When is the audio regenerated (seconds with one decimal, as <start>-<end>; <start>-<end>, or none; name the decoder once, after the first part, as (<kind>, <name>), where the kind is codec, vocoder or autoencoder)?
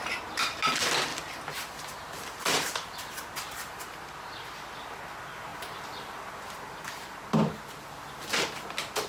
1.1-2.9 (vocoder, BigVGAN v2)